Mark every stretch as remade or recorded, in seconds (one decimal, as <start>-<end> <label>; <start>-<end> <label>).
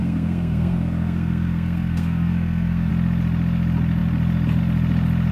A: 0.0-2.9 remade; 2.9-5.3 recorded